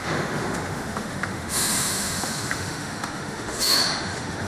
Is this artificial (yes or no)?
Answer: yes